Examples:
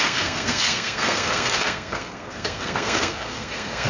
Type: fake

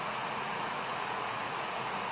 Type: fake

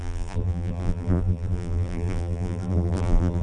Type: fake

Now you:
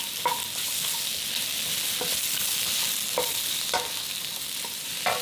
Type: real